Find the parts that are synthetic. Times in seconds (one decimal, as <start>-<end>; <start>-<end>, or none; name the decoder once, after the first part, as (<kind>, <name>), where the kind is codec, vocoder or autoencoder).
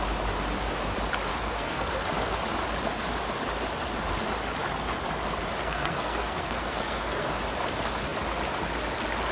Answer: 1.3-1.9 (codec, SNAC); 5.6-7.4